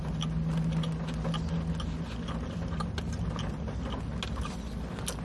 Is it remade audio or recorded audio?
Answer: recorded